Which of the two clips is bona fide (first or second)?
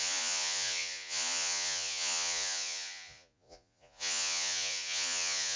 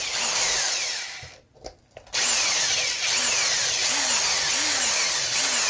second